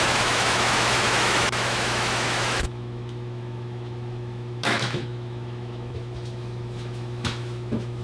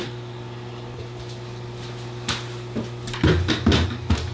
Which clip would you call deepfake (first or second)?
first